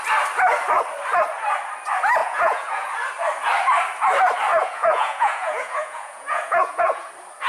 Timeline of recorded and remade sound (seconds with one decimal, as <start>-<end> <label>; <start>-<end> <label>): 0.0-2.2 recorded; 2.2-2.9 remade; 2.9-4.5 recorded; 4.5-7.1 remade; 7.1-7.5 recorded